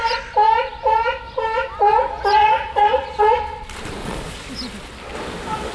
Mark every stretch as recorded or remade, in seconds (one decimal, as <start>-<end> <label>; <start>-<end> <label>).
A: 0.0-2.4 recorded; 2.4-3.2 remade; 3.2-4.0 recorded; 4.0-4.5 remade; 4.5-5.7 recorded